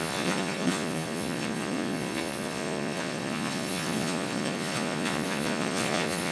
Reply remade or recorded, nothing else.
remade